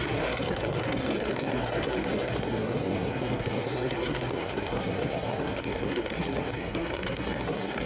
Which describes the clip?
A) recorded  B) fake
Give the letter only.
B